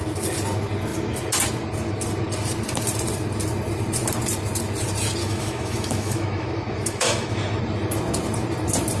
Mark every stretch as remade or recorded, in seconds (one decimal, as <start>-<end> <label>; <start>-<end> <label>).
0.0-5.2 recorded; 5.2-7.6 remade; 7.6-9.0 recorded

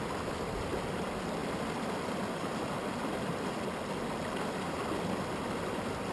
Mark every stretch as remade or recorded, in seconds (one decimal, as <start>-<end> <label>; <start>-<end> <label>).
0.0-6.1 recorded